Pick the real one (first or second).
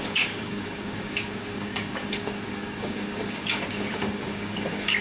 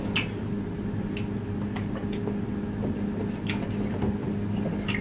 second